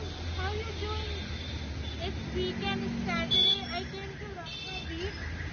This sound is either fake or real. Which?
real